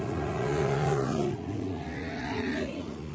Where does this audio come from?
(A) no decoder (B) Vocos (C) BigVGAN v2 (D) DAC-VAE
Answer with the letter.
B